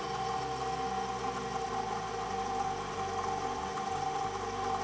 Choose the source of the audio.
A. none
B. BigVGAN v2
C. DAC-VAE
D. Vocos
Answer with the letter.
A